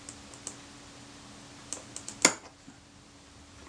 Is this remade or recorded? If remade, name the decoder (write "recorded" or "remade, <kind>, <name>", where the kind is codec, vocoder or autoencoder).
recorded